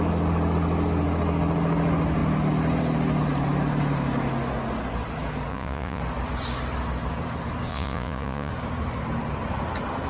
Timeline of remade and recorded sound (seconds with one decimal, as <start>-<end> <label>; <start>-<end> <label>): 0.0-5.5 recorded; 5.5-6.0 remade; 6.0-7.7 recorded; 7.7-8.5 remade; 8.5-10.1 recorded